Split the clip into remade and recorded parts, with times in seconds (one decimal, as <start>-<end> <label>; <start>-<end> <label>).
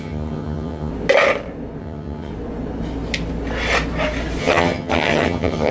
0.0-0.9 remade; 0.9-1.8 recorded; 1.8-2.3 remade; 2.3-4.4 recorded; 4.4-5.7 remade